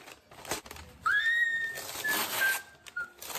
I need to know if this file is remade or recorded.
recorded